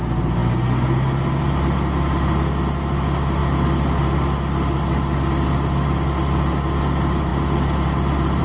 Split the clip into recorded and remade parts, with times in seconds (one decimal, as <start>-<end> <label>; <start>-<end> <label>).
0.0-8.4 recorded

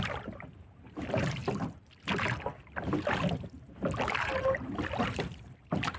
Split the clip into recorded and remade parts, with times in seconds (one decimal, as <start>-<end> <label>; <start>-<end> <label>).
0.0-1.4 remade; 1.4-5.0 recorded; 5.0-6.0 remade

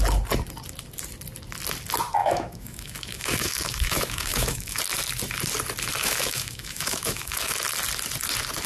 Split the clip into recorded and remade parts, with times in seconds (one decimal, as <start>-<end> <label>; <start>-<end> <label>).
0.0-2.2 recorded; 2.2-4.8 remade; 4.8-6.0 recorded; 6.0-7.5 remade; 7.5-8.7 recorded

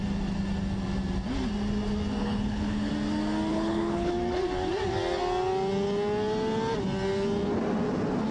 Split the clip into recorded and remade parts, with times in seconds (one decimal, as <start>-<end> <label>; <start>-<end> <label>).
0.0-2.2 recorded; 2.2-2.9 remade; 2.9-3.5 recorded; 3.5-4.1 remade; 4.1-8.3 recorded

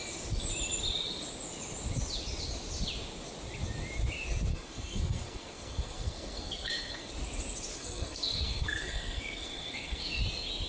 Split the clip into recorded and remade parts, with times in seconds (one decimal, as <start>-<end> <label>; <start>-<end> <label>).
0.0-4.5 recorded; 4.5-7.1 remade; 7.1-7.7 recorded; 7.7-10.2 remade; 10.2-10.7 recorded

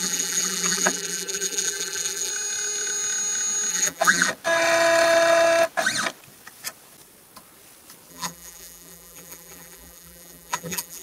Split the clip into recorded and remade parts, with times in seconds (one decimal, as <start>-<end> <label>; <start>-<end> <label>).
0.0-2.3 remade; 2.3-3.7 recorded; 3.7-4.3 remade; 4.3-8.1 recorded; 8.1-11.0 remade

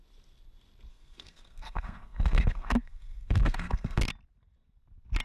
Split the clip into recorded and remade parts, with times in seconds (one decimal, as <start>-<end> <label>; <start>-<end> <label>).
0.0-0.9 recorded; 0.9-4.0 remade; 4.0-5.2 recorded